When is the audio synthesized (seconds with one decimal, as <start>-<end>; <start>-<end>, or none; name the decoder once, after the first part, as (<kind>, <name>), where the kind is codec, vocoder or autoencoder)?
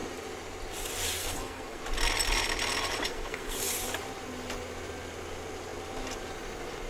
1.2-1.8 (codec, SNAC); 3.1-3.7